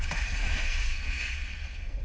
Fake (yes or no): yes